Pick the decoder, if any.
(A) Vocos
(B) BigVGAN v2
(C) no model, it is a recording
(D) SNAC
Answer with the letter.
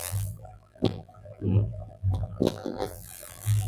B